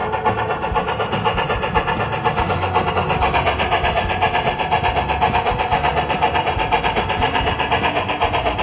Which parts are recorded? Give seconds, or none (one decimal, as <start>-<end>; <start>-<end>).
0.0-5.9; 7.7-8.6